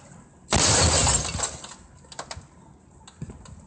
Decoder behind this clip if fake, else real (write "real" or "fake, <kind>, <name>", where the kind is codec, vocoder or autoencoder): real